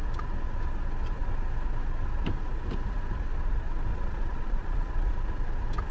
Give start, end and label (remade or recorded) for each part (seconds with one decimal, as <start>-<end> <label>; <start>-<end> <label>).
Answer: 0.0-3.9 recorded; 3.9-5.2 remade; 5.2-5.9 recorded